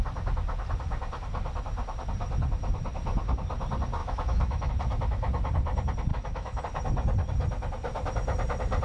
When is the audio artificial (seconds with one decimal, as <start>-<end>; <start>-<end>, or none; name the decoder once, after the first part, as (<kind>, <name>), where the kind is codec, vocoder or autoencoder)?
4.0-4.7 (autoencoder, DAC-VAE); 6.1-6.6